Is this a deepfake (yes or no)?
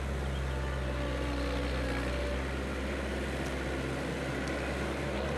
no